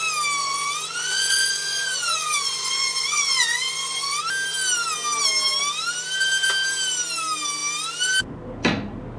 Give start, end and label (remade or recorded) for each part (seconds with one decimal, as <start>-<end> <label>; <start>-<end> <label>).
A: 0.0-0.4 recorded; 0.4-4.2 remade; 4.2-9.2 recorded